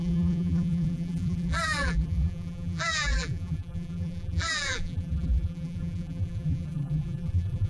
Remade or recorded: remade